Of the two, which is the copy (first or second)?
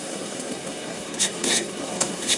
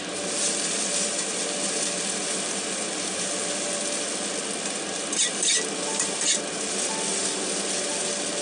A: first